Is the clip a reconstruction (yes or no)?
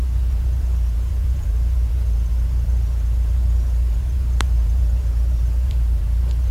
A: yes